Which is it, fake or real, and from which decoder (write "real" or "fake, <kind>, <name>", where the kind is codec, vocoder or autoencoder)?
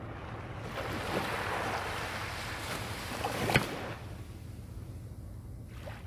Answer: real